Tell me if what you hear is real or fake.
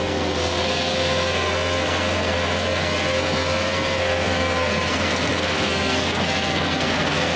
fake